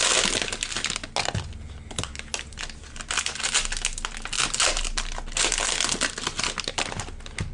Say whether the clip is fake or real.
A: real